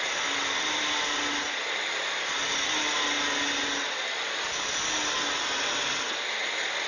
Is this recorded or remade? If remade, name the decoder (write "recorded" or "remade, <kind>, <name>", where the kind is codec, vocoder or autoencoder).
recorded